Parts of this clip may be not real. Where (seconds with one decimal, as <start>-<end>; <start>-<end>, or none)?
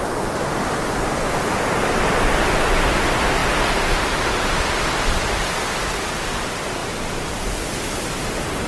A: none